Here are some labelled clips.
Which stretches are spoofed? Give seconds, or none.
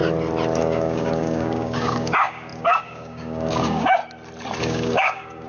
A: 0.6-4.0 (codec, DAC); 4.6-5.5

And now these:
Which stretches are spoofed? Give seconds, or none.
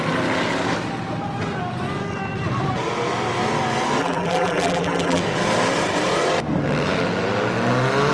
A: 4.0-5.2 (vocoder, BigVGAN v2)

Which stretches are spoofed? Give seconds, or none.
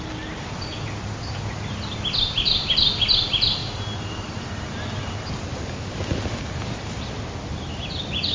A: none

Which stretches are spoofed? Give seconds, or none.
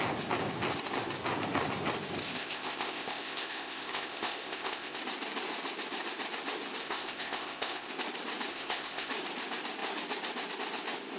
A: 2.2-5.0 (codec, ZipCodec); 6.8-7.9; 8.5-9.1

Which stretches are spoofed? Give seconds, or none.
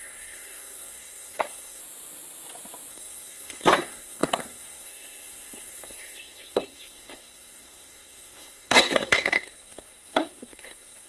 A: 0.0-1.8 (codec, SNAC); 2.9-11.1